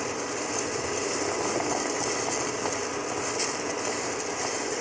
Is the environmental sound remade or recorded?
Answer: recorded